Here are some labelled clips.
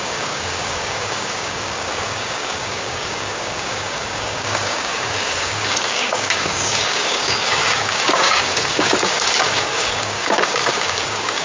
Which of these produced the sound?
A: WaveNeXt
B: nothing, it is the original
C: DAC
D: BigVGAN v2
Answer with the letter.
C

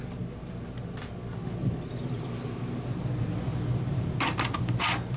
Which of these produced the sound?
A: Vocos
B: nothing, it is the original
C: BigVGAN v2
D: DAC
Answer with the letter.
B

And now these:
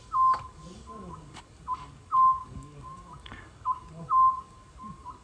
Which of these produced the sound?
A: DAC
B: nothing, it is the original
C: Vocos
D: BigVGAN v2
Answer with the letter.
A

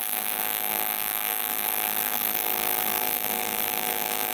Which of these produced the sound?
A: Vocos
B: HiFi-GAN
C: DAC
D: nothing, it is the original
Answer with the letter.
C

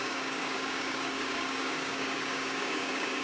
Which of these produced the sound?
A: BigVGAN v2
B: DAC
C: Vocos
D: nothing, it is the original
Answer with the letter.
B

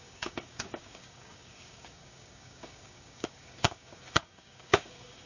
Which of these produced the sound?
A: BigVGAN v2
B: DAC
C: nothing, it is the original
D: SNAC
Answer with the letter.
B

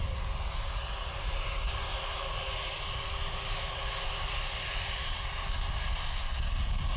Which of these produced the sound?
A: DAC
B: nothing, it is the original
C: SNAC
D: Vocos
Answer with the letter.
B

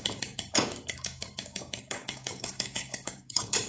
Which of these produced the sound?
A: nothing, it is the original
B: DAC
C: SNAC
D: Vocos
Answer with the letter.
B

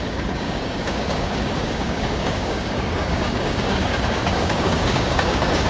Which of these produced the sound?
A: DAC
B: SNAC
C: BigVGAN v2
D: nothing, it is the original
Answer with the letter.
A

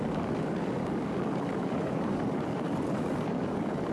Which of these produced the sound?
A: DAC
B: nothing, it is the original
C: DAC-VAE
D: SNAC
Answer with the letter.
A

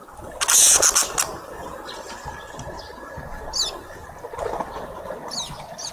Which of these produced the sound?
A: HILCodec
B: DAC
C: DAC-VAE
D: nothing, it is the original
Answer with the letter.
D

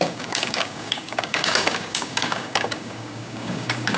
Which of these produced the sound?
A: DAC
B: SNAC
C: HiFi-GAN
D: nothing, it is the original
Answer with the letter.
A